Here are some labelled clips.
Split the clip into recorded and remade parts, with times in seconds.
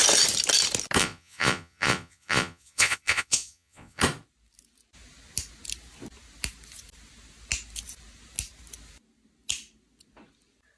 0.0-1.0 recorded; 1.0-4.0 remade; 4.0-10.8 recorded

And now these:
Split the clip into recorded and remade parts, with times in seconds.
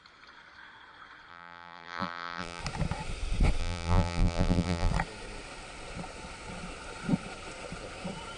0.0-1.3 recorded; 1.3-2.6 remade; 2.6-3.6 recorded; 3.6-4.9 remade; 4.9-8.4 recorded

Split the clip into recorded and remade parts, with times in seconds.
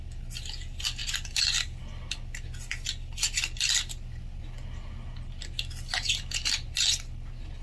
0.0-7.6 recorded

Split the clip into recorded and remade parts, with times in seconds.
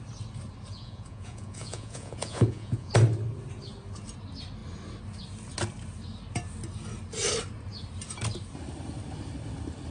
0.0-0.7 recorded; 0.7-2.9 remade; 2.9-9.9 recorded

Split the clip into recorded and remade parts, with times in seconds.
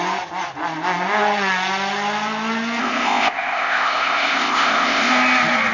0.0-2.8 recorded; 2.8-5.1 remade; 5.1-5.7 recorded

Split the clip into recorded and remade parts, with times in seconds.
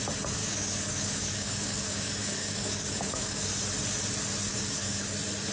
0.0-0.4 recorded; 0.4-3.5 remade; 3.5-4.5 recorded; 4.5-5.0 remade; 5.0-5.5 recorded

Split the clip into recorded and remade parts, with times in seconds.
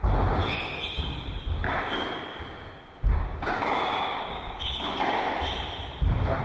0.0-1.4 recorded; 1.4-5.2 remade; 5.2-6.4 recorded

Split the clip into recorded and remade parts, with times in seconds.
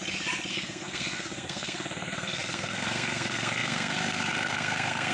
0.0-0.5 recorded; 0.5-5.1 remade